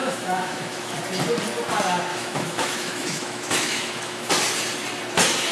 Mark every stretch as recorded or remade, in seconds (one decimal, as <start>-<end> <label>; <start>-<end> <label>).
0.0-1.0 remade; 1.0-2.1 recorded; 2.1-4.3 remade; 4.3-5.5 recorded